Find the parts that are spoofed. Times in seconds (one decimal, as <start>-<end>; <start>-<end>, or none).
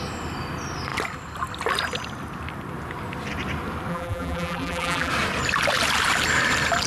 3.9-5.1